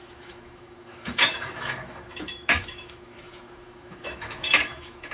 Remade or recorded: remade